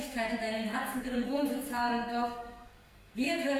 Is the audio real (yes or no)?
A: no